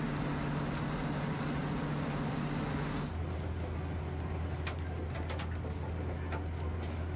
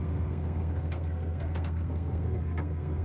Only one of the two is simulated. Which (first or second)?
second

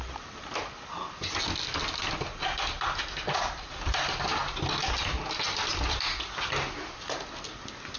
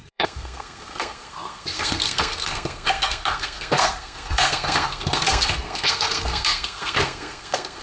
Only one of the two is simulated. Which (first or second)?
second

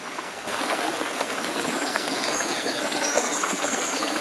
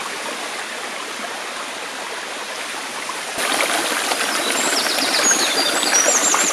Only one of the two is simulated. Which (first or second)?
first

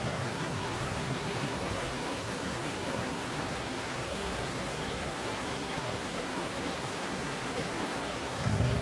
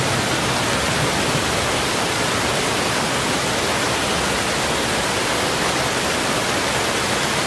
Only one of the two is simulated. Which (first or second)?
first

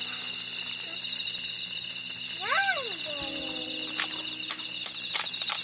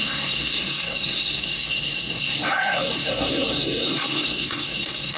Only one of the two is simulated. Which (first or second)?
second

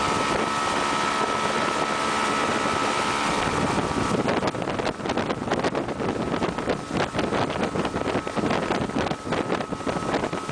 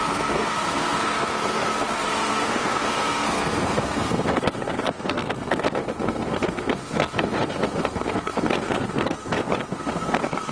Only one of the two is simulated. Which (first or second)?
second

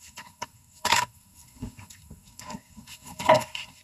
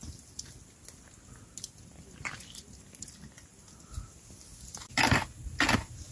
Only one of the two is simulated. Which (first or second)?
first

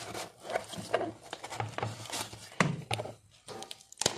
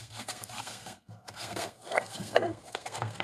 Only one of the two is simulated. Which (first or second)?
second